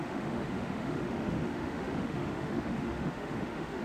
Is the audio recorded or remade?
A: remade